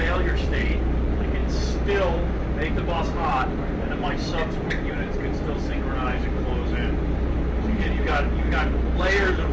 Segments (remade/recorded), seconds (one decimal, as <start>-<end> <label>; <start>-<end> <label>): 0.0-1.4 remade; 1.4-2.7 recorded; 2.7-4.3 remade; 4.3-6.4 recorded; 6.4-9.5 remade